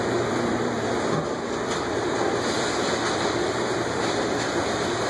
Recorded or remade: remade